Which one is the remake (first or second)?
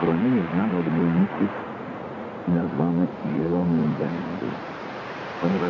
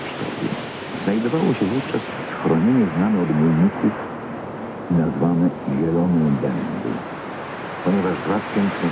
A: first